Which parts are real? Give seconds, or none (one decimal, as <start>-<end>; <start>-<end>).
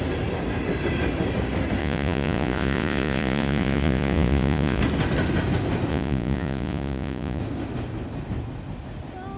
0.0-1.8; 4.8-5.9; 7.4-9.4